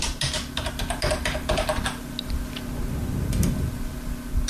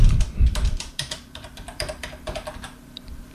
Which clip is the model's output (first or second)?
second